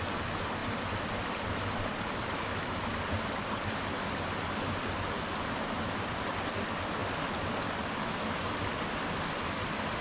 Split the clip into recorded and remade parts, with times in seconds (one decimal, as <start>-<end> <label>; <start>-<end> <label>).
0.0-0.6 recorded; 0.6-1.1 remade; 1.1-10.0 recorded